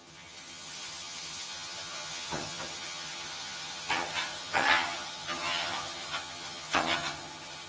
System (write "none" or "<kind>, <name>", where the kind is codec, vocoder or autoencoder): vocoder, HiFi-GAN